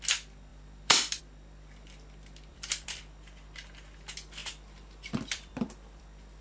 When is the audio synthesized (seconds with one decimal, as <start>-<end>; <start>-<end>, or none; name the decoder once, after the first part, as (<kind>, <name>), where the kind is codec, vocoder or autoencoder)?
0.5-1.2 (vocoder, BigVGAN v2); 2.5-3.0; 4.4-6.0